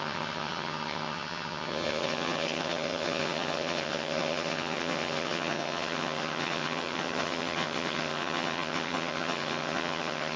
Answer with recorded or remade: remade